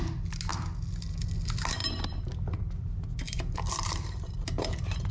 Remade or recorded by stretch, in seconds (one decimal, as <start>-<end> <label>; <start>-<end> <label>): 0.0-1.8 recorded; 1.8-5.1 remade